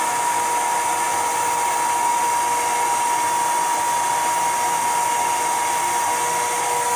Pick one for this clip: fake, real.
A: real